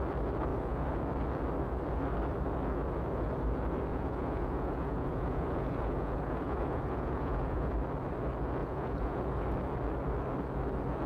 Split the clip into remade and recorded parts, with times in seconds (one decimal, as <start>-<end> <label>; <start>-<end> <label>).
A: 0.0-0.5 recorded; 0.5-1.0 remade; 1.0-3.9 recorded; 3.9-7.7 remade; 7.7-8.6 recorded; 8.6-9.4 remade; 9.4-11.1 recorded